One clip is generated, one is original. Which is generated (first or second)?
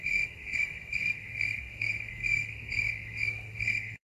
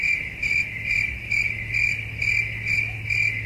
first